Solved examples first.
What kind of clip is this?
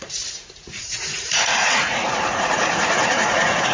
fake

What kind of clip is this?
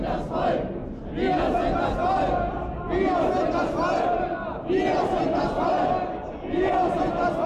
real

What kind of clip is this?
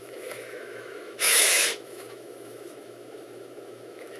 fake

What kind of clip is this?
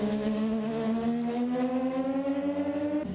fake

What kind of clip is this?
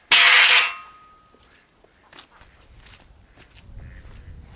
real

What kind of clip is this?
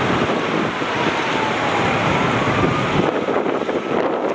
real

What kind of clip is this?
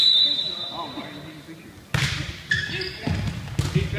real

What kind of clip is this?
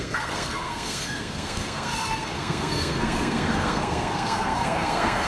fake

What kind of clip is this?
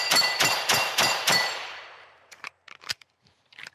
fake